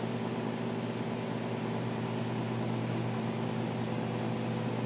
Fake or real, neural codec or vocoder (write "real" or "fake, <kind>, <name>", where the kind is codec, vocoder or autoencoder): real